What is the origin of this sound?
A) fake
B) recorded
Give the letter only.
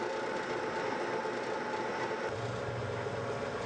B